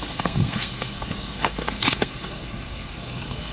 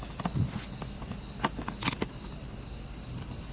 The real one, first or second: second